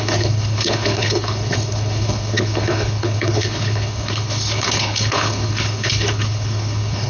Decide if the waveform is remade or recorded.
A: remade